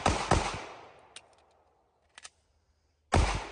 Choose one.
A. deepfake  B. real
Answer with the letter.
B